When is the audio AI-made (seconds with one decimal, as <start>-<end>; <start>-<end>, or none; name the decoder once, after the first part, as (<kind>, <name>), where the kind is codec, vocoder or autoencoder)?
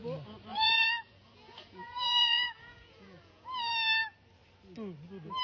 0.5-3.7 (vocoder, Vocos)